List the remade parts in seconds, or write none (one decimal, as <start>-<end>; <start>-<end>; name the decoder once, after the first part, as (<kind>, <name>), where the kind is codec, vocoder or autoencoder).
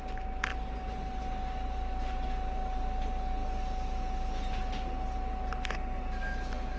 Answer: none